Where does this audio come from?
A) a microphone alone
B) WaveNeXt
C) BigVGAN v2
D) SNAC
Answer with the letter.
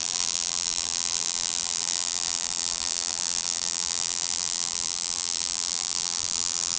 C